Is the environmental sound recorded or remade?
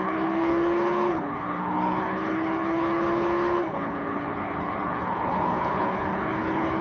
remade